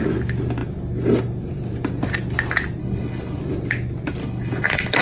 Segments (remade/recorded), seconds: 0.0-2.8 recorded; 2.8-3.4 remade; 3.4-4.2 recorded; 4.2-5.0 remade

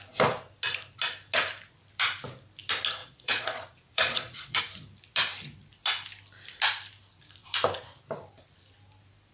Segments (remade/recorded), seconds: 0.0-3.0 recorded; 3.0-4.6 remade; 4.6-9.3 recorded

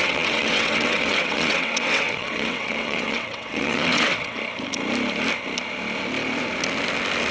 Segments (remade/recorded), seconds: 0.0-4.4 remade; 4.4-7.3 recorded

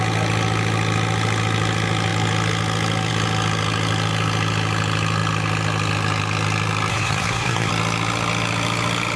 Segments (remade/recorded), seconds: 0.0-6.9 recorded; 6.9-7.7 remade; 7.7-9.2 recorded